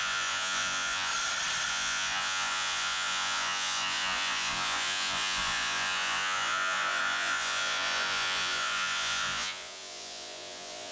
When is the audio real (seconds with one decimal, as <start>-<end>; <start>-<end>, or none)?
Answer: 1.1-1.7